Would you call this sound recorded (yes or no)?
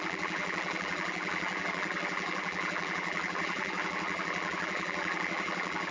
no